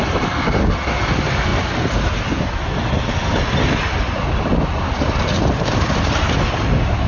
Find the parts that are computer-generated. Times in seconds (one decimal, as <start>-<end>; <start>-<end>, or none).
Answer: none